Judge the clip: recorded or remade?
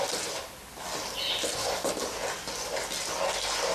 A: recorded